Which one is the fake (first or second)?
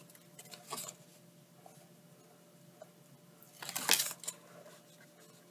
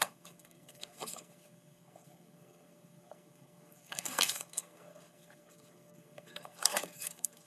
second